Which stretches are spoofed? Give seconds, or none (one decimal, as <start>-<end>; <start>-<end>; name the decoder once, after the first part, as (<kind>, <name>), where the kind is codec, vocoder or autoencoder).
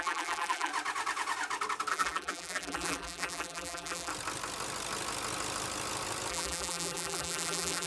0.0-0.7 (vocoder, BigVGAN v2); 1.9-4.1; 6.3-7.9